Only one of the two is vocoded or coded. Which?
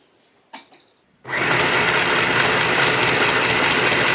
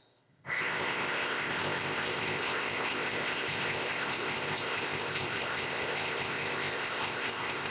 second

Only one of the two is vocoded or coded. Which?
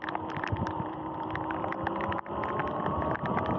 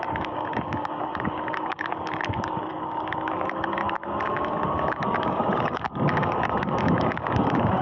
second